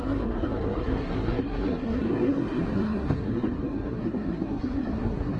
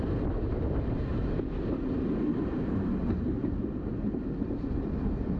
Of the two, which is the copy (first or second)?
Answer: first